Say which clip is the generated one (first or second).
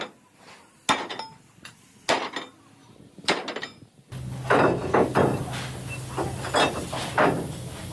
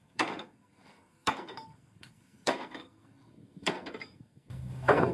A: second